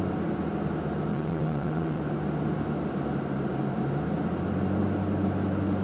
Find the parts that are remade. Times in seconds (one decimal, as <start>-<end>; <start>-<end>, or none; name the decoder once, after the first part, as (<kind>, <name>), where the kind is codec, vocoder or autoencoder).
1.1-2.0 (vocoder, WaveNeXt)